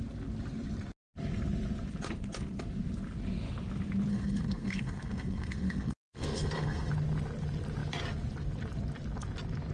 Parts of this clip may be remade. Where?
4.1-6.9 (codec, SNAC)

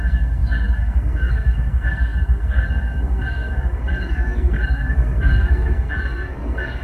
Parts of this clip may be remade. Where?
0.0-6.8 (codec, SNAC)

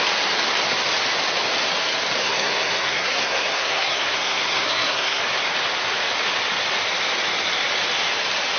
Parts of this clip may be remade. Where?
2.2-5.2 (codec, SNAC)

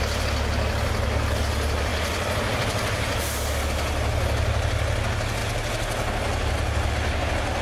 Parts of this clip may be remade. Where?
none

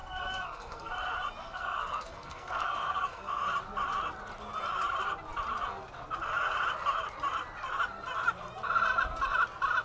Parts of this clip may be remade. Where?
0.0-0.9 (codec, SNAC); 1.4-3.4